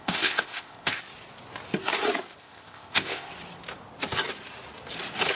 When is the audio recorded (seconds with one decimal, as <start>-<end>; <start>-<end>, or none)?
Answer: 1.0-2.4; 3.3-5.3